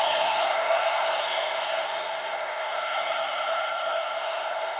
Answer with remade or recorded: remade